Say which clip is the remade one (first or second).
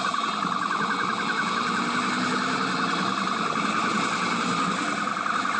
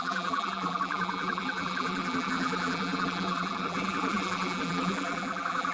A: second